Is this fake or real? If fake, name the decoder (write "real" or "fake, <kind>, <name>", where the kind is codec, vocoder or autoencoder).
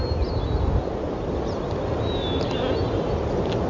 real